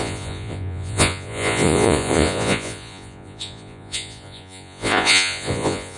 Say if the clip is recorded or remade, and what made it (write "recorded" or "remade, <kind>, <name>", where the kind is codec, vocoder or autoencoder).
remade, vocoder, Vocos